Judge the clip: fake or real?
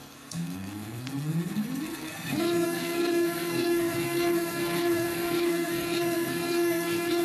fake